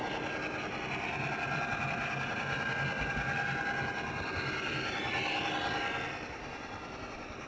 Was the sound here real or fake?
real